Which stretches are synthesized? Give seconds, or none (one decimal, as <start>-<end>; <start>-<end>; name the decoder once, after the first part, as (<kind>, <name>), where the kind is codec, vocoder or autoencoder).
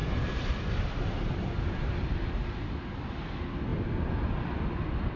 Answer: none